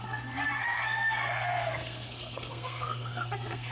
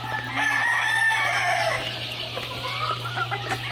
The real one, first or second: second